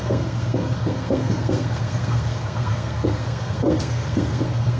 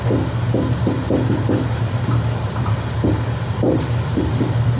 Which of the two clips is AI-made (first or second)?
first